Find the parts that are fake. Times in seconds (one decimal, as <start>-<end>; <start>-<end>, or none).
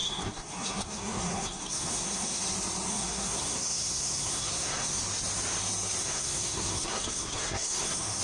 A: 0.0-2.4; 2.9-5.0; 6.0-8.2